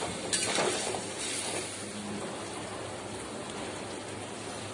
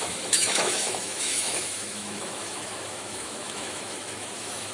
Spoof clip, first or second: second